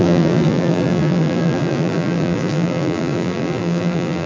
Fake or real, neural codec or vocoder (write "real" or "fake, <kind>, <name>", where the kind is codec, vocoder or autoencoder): fake, vocoder, BigVGAN v2